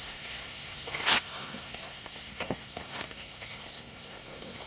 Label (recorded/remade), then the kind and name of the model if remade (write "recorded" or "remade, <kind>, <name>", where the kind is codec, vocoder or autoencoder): remade, codec, SNAC